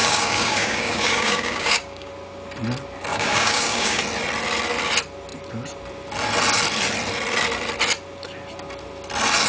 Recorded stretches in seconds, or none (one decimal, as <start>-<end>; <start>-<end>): 2.1-3.1; 4.0-9.5